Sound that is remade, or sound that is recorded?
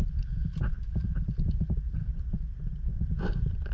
recorded